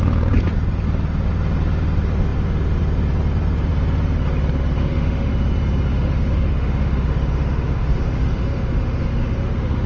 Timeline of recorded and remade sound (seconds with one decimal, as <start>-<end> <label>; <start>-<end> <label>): 0.0-4.8 recorded; 4.8-5.3 remade; 5.3-5.9 recorded; 5.9-9.9 remade

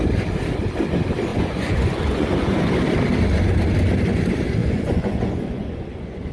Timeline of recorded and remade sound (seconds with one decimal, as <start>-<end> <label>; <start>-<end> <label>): 0.0-1.3 recorded; 1.3-2.7 remade; 2.7-4.6 recorded; 4.6-6.3 remade

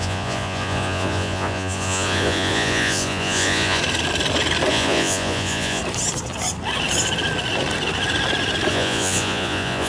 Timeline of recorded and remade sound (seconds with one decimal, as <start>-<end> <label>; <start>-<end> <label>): 0.0-3.8 remade; 3.8-4.7 recorded; 4.7-5.8 remade; 5.8-8.7 recorded; 8.7-9.9 remade

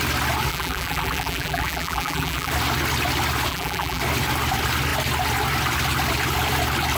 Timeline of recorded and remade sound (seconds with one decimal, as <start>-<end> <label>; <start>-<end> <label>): 0.0-0.5 recorded; 0.5-2.5 remade; 2.5-3.5 recorded; 3.5-4.0 remade; 4.0-7.0 recorded